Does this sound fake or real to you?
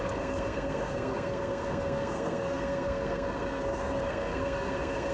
fake